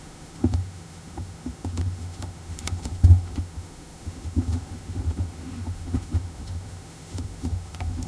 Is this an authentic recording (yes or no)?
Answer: no